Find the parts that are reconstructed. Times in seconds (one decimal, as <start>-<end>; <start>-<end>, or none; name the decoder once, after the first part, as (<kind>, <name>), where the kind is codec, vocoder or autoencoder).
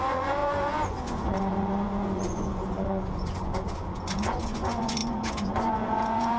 0.0-6.4 (vocoder, Vocos)